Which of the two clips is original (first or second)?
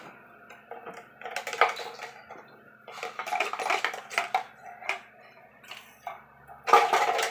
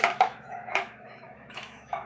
first